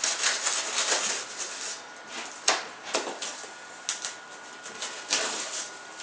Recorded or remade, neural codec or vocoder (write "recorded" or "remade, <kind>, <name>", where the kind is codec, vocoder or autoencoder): recorded